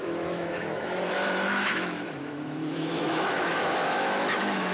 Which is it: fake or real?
fake